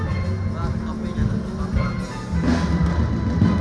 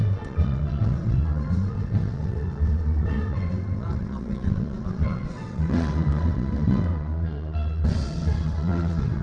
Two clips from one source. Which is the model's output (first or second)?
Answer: second